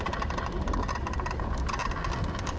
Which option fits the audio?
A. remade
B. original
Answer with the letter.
B